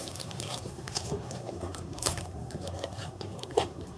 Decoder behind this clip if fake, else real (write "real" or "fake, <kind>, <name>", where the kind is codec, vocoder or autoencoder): fake, codec, SNAC